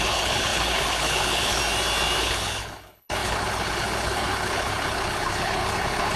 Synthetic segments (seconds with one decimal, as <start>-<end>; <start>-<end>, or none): 0.0-1.6; 2.2-6.2